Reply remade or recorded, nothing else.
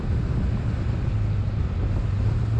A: recorded